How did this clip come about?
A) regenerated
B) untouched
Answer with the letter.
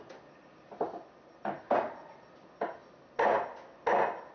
B